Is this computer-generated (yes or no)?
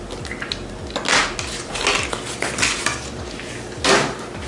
no